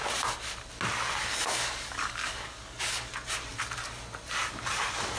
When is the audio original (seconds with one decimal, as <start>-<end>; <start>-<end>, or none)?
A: 0.0-1.3; 3.1-5.2